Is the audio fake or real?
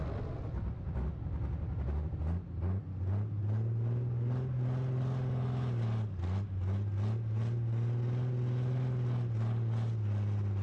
real